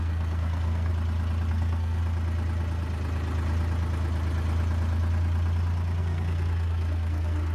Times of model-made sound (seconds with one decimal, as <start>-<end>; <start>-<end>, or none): 0.0-0.9; 1.5-2.0; 6.0-7.5